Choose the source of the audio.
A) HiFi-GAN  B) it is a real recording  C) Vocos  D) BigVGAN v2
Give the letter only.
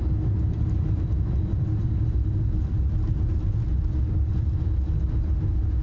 D